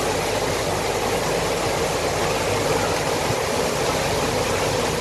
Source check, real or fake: real